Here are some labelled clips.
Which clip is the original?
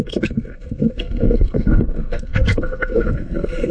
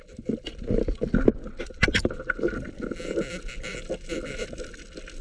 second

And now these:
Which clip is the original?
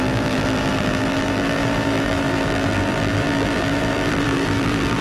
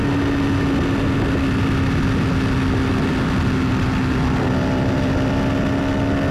second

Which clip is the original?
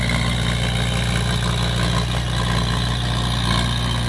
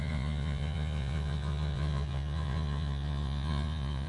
first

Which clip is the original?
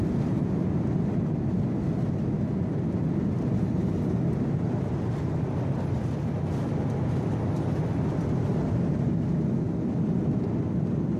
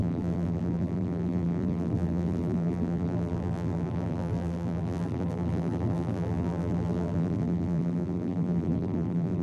first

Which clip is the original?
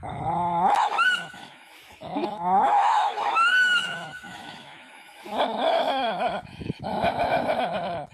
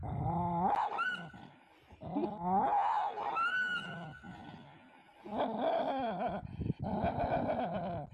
second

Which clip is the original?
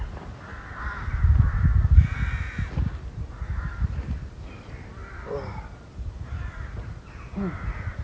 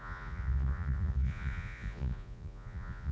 first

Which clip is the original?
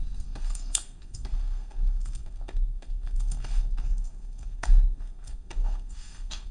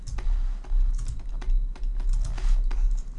second